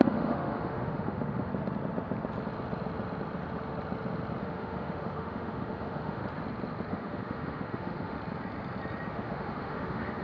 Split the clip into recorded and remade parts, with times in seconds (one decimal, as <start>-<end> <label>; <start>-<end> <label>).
0.0-1.5 remade; 1.5-4.4 recorded; 4.4-6.2 remade; 6.2-6.9 recorded; 6.9-8.2 remade; 8.2-9.1 recorded; 9.1-10.2 remade